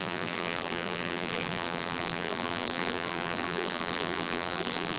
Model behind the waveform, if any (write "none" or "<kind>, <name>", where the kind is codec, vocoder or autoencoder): vocoder, BigVGAN v2